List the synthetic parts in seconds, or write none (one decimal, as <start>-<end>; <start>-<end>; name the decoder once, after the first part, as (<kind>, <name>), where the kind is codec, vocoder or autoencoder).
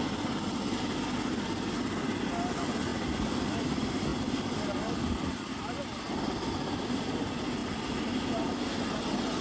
2.9-3.4 (vocoder, BigVGAN v2); 4.1-5.4